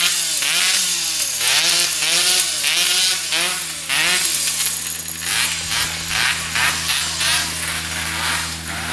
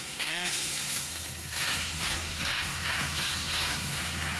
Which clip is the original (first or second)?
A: first